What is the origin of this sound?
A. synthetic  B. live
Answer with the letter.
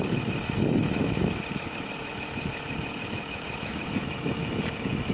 A